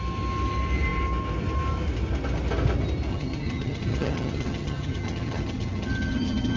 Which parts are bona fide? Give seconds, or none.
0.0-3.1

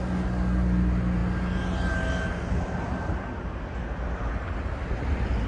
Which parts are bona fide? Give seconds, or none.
0.0-5.5

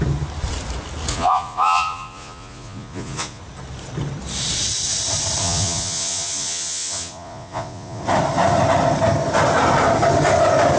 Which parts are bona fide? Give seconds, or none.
0.0-1.1; 3.4-5.4; 8.0-10.8